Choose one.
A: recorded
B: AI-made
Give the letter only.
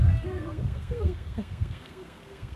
B